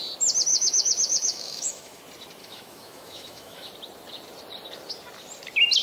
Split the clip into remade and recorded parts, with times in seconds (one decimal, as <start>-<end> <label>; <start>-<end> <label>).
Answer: 0.0-0.5 recorded; 0.5-2.0 remade; 2.0-2.4 recorded; 2.4-3.7 remade; 3.7-5.8 recorded